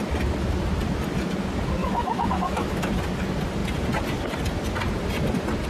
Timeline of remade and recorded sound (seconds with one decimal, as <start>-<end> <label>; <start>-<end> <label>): 0.0-1.8 recorded; 1.8-2.9 remade; 2.9-5.7 recorded